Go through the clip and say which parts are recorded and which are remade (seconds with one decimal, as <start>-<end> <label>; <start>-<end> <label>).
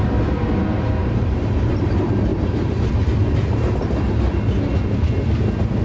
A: 0.0-1.0 recorded; 1.0-1.8 remade; 1.8-2.3 recorded; 2.3-2.9 remade; 2.9-5.8 recorded